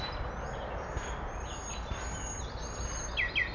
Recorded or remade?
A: recorded